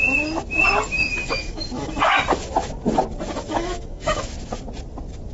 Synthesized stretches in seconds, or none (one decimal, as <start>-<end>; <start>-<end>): 1.2-2.2; 3.5-4.2